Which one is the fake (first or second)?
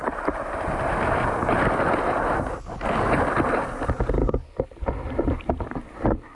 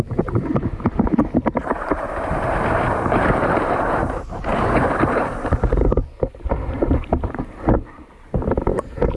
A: second